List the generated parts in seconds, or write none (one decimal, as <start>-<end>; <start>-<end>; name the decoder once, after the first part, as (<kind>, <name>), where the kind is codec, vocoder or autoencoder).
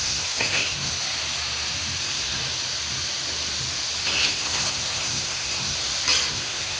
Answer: 0.0-0.9 (codec, SNAC); 2.0-2.4; 4.0-5.8; 6.3-6.8